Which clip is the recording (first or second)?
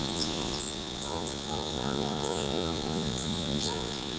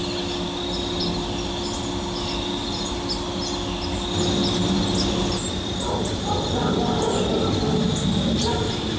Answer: second